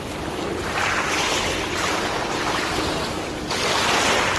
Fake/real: real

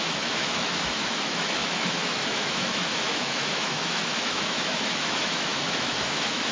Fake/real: fake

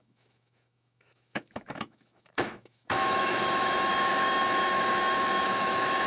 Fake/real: fake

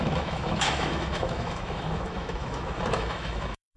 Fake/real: fake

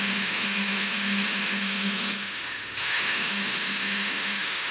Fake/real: fake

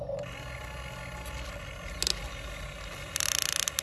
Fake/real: real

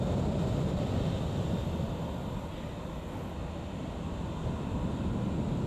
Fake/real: real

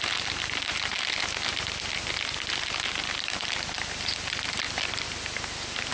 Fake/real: real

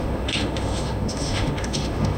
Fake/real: fake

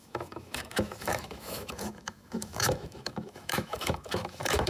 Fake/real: fake